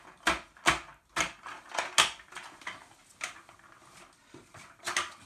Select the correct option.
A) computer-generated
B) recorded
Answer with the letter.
B